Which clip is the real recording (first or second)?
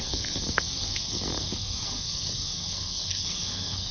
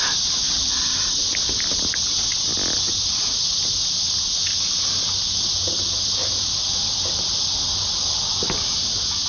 second